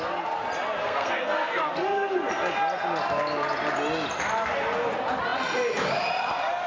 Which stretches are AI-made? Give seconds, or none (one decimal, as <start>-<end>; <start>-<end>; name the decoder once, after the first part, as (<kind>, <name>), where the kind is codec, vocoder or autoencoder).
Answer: 0.8-2.3 (codec, SNAC)